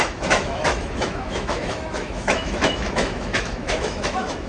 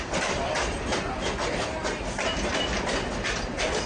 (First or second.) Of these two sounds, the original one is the second